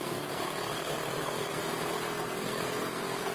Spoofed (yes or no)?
yes